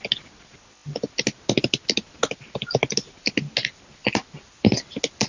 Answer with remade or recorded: recorded